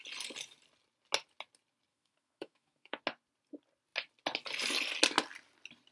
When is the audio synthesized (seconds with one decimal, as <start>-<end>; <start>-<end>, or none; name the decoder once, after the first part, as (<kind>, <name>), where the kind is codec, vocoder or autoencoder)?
1.9-3.0 (autoencoder, DAC-VAE)